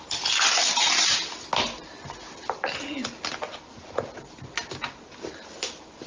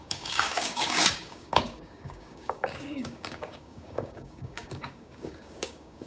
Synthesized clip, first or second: second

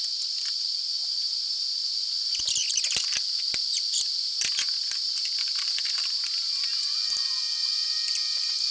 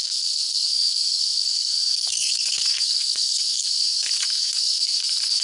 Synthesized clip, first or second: second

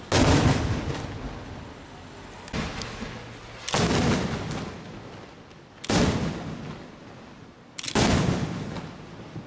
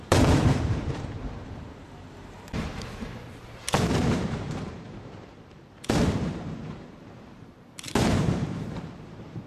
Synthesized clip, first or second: second